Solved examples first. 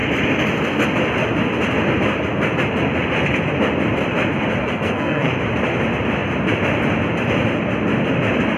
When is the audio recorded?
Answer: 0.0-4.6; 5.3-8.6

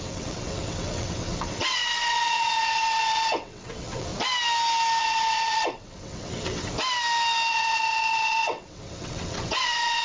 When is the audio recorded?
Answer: 4.1-5.0; 6.7-7.5

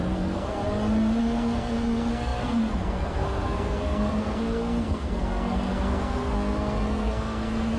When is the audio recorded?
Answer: 0.6-1.2

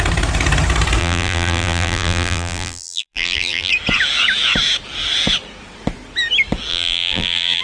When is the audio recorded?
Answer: 0.0-1.0; 3.7-6.7

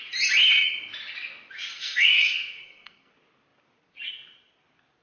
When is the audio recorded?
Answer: 0.0-1.7; 3.1-5.0

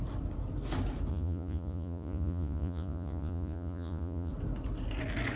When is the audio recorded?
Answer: 0.0-1.1; 4.3-5.4

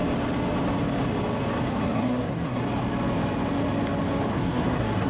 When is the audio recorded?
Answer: 0.0-1.7; 2.6-4.3